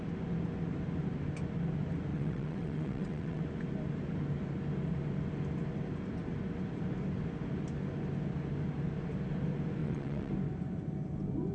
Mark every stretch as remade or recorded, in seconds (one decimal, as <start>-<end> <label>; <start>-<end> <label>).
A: 0.0-2.1 recorded; 2.1-3.4 remade; 3.4-9.8 recorded; 9.8-10.3 remade; 10.3-11.5 recorded